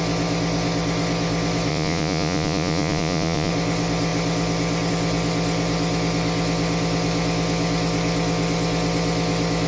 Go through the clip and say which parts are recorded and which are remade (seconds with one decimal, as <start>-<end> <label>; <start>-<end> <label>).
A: 0.0-1.7 recorded; 1.7-3.5 remade; 3.5-9.7 recorded